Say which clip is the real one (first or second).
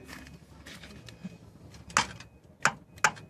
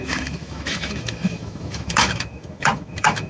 first